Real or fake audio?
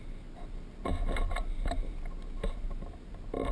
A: real